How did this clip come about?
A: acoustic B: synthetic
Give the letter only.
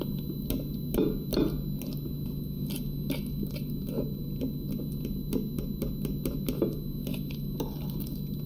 A